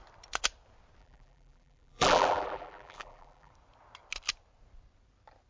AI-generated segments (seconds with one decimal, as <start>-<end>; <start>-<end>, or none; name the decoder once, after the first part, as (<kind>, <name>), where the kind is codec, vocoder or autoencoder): 1.0-3.5 (vocoder, BigVGAN v2)